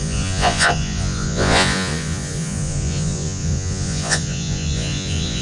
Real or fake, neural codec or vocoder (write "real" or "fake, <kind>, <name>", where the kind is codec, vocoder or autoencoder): fake, vocoder, Vocos